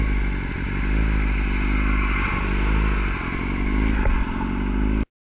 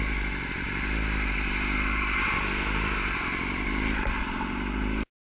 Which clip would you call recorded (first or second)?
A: first